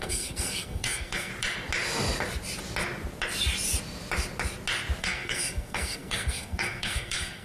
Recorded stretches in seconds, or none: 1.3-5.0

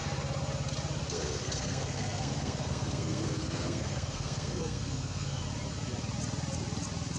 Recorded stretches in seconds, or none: 0.0-1.1; 5.4-7.2

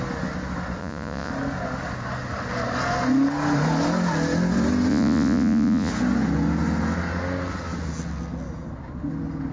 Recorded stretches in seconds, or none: 0.0-0.8; 1.3-4.9; 5.9-9.5

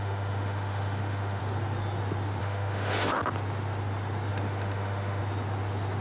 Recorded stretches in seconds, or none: 1.4-2.4; 3.2-4.3; 5.2-6.0

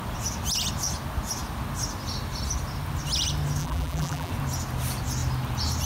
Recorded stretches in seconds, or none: 0.0-3.6; 4.3-5.9

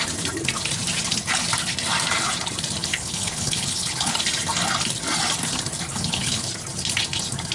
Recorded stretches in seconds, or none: 0.0-2.9; 4.2-5.9; 6.5-7.5

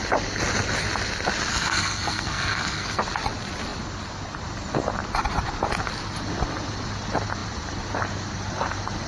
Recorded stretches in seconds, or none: 0.0-1.5; 3.0-9.1